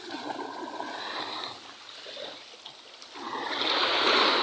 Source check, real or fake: real